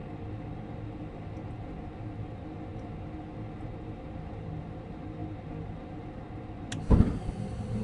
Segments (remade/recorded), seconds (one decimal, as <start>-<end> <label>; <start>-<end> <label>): 0.0-7.8 recorded